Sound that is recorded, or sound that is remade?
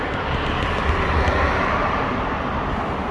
recorded